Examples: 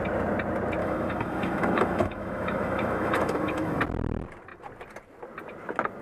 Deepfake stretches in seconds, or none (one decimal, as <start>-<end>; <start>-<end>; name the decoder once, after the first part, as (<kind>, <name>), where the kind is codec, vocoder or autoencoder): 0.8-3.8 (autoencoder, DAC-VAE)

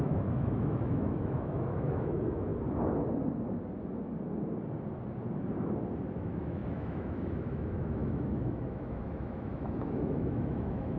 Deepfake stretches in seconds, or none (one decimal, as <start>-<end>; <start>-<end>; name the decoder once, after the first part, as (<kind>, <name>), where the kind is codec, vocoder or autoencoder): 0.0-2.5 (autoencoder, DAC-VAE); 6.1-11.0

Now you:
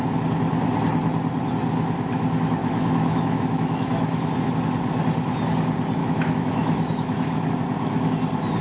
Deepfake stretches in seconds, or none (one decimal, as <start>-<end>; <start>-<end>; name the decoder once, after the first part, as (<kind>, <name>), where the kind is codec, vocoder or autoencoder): 2.6-4.3 (autoencoder, DAC-VAE); 6.0-7.5

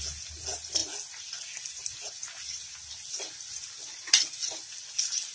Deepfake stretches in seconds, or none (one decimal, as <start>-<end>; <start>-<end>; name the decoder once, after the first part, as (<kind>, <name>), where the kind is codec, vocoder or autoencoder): none

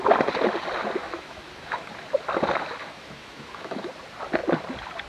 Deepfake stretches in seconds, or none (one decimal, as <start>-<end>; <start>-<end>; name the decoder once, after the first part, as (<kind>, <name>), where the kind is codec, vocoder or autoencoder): 1.0-1.9 (autoencoder, DAC-VAE); 2.8-3.9

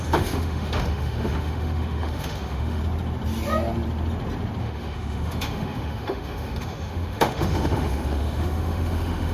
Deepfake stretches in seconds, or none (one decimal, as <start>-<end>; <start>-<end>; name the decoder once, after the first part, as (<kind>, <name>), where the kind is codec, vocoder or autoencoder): 0.0-2.8 (autoencoder, DAC-VAE); 4.6-9.3

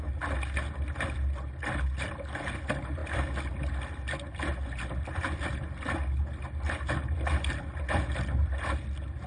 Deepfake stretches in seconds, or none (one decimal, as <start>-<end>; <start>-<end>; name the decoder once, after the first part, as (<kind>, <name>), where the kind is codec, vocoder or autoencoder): none